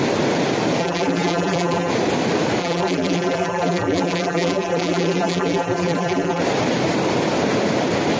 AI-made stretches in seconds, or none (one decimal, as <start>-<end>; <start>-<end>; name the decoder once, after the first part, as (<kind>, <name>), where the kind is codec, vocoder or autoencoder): 0.8-1.9 (vocoder, BigVGAN v2); 2.6-6.4